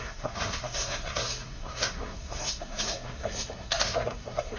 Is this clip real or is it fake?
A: fake